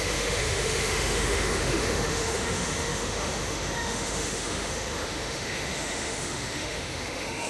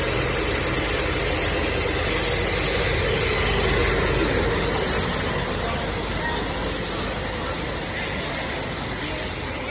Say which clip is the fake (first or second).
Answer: first